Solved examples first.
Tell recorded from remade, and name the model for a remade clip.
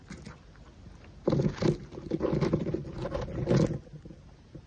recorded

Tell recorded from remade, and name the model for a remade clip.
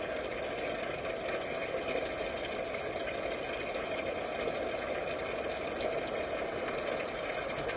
recorded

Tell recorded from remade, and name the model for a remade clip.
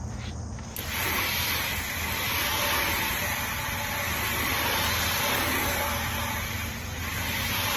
recorded